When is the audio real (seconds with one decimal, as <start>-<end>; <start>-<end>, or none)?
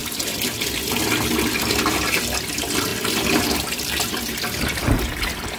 0.5-2.9; 4.4-5.6